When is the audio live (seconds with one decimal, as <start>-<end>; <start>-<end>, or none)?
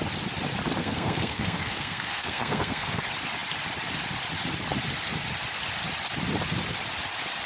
0.0-0.8; 3.0-7.5